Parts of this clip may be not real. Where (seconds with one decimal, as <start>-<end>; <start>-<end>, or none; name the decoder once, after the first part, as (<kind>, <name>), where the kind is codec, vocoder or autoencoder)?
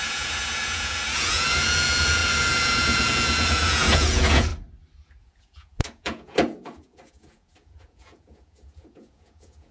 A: 0.0-4.5 (vocoder, Vocos); 5.2-9.7